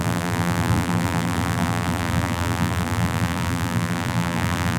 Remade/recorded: remade